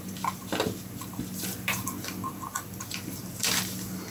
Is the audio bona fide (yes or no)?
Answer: no